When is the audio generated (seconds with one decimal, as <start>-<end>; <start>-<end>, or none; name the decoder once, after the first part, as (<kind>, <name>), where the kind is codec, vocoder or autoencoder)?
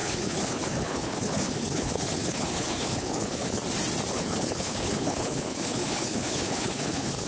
0.0-3.6 (codec, HILCodec); 4.1-7.3